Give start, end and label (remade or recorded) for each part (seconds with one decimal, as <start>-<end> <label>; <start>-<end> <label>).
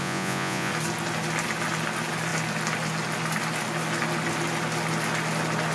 0.0-0.7 remade; 0.7-5.7 recorded